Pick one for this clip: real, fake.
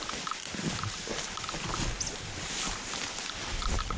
real